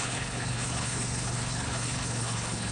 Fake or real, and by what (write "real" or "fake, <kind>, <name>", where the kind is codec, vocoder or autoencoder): fake, codec, HILCodec